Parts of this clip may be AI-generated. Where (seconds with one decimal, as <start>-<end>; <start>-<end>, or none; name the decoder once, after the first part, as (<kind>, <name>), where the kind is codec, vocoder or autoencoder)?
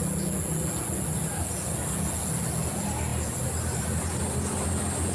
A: none